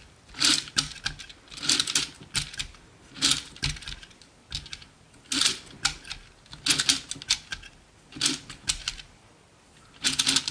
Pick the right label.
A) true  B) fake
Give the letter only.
A